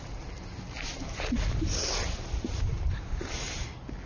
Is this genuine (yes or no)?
yes